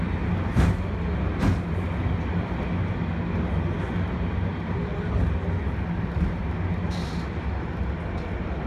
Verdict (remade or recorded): recorded